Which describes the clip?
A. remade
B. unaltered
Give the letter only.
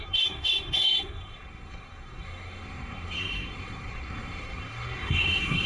A